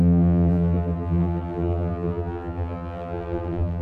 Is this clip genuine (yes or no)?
no